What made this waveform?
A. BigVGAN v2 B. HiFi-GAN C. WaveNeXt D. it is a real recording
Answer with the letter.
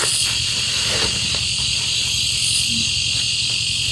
D